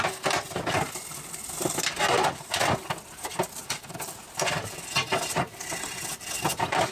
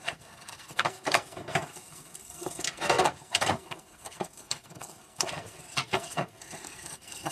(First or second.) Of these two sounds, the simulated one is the second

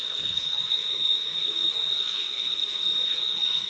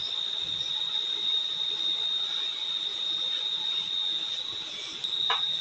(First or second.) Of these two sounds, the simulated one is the first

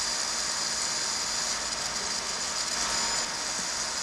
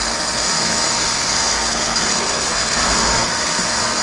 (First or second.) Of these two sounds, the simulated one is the second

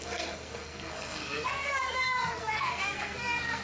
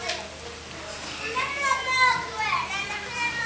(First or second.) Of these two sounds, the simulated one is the first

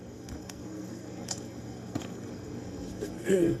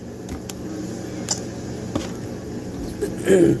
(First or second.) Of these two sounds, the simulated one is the first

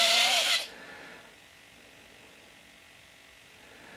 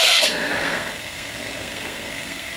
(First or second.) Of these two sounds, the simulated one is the second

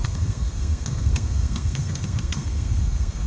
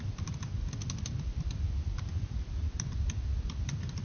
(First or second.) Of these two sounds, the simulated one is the first